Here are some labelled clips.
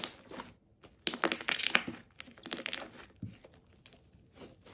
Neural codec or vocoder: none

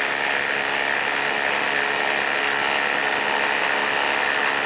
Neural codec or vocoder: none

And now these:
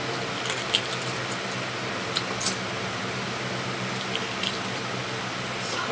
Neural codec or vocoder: none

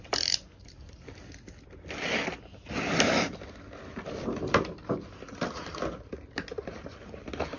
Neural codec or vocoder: none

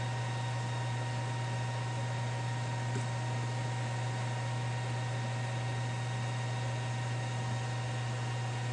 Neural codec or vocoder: none